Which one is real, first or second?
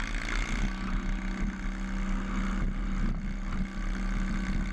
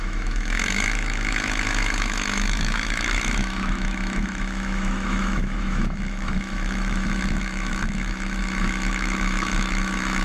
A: first